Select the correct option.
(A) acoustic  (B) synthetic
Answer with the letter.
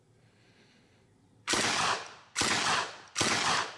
A